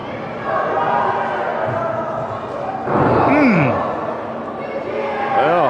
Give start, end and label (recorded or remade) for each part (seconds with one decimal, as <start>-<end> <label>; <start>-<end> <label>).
0.0-0.7 remade; 0.7-5.7 recorded